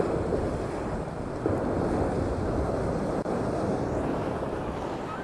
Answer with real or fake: real